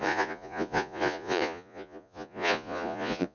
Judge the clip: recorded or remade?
remade